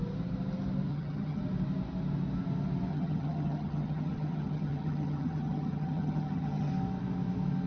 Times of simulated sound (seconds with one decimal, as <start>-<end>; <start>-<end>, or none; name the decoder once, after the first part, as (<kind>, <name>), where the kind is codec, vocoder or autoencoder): 0.9-1.4 (vocoder, HiFi-GAN); 2.9-6.7